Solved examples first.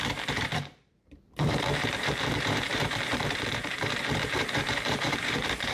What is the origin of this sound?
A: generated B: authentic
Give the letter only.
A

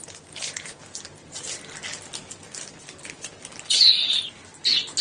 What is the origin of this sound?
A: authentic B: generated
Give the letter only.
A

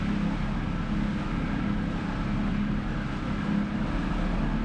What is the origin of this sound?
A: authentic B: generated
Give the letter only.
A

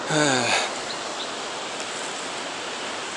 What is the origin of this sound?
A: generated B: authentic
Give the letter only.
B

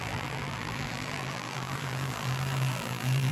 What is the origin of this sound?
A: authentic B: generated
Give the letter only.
B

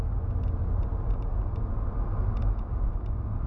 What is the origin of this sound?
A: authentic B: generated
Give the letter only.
A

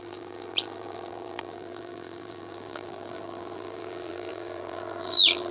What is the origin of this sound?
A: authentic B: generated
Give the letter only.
B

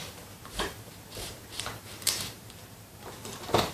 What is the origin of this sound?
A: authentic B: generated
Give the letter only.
B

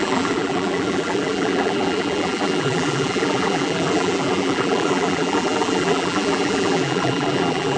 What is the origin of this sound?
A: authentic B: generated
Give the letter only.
B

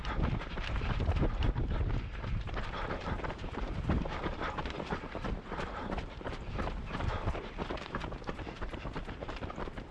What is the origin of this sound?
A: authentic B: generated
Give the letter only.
B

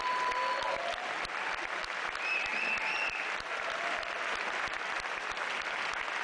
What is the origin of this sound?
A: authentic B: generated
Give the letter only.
A